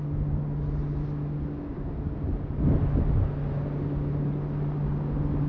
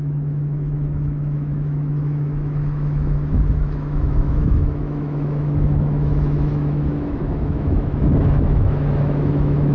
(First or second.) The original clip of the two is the first